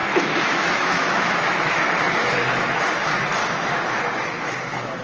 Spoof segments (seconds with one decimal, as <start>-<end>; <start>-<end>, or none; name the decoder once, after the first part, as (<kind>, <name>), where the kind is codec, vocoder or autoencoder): 0.0-3.0 (autoencoder, DAC-VAE); 3.4-5.0